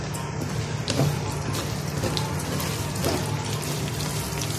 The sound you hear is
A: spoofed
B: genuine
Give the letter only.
B